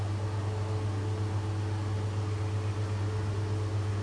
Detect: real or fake real